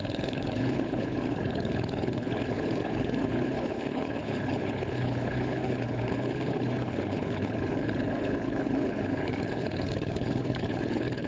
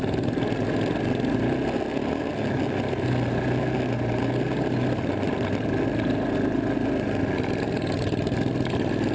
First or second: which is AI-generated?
first